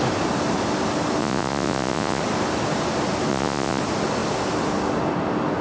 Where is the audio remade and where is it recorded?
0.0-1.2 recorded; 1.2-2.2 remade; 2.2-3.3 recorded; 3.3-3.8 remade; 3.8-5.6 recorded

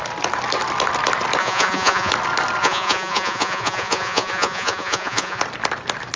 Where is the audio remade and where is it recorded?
0.0-1.4 recorded; 1.4-2.1 remade; 2.1-2.6 recorded; 2.6-5.4 remade; 5.4-6.2 recorded

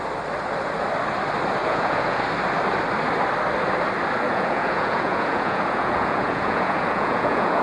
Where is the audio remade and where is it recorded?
0.0-1.6 recorded; 1.6-2.2 remade; 2.2-4.3 recorded; 4.3-7.6 remade

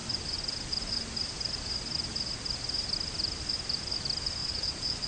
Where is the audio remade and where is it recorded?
0.0-4.4 recorded; 4.4-5.1 remade

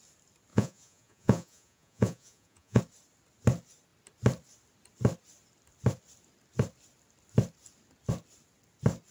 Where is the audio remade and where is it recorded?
0.0-0.5 recorded; 0.5-2.8 remade; 2.8-9.1 recorded